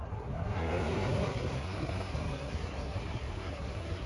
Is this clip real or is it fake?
fake